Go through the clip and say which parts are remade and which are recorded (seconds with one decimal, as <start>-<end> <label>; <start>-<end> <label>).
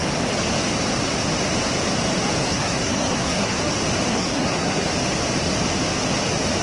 0.0-2.4 recorded; 2.4-3.6 remade; 3.6-4.1 recorded; 4.1-4.9 remade; 4.9-6.6 recorded